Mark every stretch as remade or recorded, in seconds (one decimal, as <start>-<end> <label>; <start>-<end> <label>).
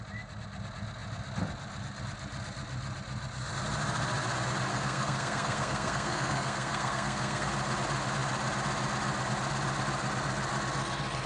0.0-4.7 recorded; 4.7-7.5 remade; 7.5-11.3 recorded